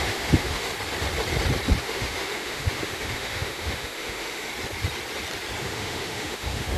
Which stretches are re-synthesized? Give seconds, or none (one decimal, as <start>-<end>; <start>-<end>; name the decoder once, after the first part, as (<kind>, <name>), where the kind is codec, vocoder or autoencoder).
0.0-0.7 (autoencoder, DAC-VAE); 1.8-4.5; 5.6-6.8